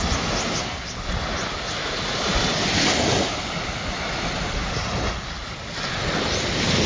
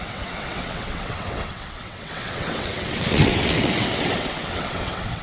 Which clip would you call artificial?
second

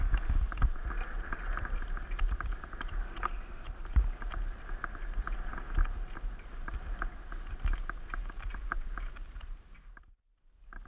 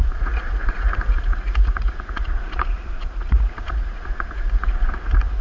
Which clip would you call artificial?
second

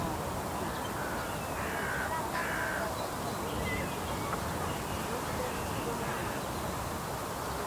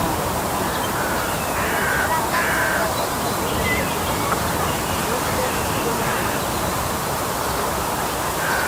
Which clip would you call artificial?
second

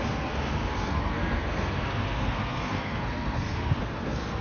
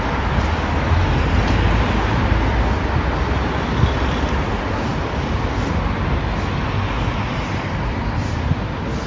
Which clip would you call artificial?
first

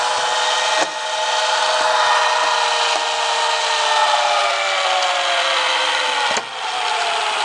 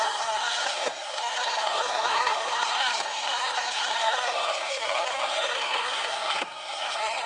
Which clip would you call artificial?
second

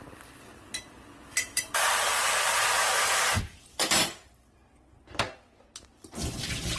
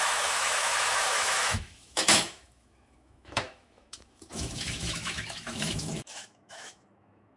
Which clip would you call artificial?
second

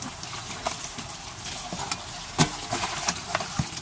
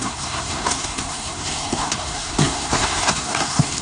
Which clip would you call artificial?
second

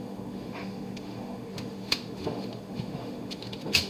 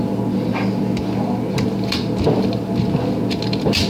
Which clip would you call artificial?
first